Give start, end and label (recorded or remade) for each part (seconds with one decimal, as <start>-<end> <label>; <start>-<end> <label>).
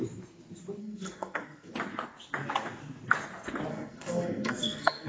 0.0-0.8 recorded; 0.8-1.7 remade; 1.7-3.7 recorded; 3.7-5.1 remade